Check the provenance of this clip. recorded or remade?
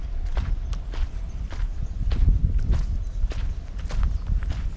recorded